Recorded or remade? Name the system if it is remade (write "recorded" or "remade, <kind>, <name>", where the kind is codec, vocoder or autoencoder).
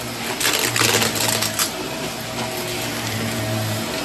recorded